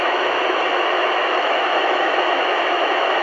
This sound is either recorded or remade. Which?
remade